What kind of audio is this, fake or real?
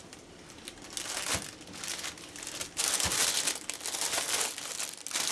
real